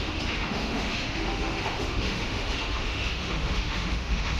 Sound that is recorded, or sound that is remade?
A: remade